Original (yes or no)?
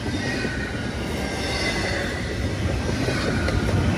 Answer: yes